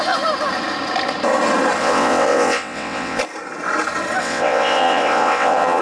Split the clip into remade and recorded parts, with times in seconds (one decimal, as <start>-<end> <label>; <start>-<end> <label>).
0.0-1.8 recorded; 1.8-3.2 remade; 3.2-4.2 recorded; 4.2-5.8 remade